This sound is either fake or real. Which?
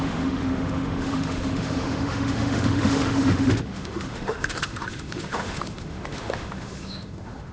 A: fake